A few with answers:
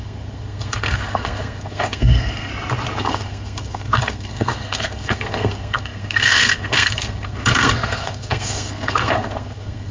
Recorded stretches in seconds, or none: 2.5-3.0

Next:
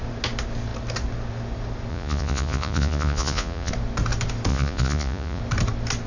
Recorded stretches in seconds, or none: 0.0-1.9; 3.7-4.5; 5.4-6.1

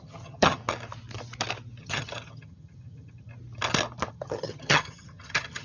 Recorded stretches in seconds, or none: 0.6-1.8; 3.3-4.1